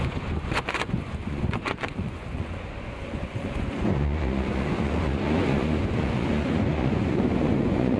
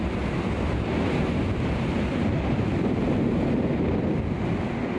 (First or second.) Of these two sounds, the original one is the second